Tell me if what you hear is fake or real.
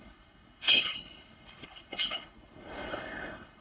fake